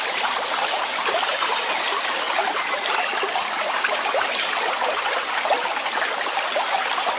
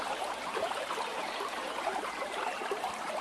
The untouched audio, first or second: first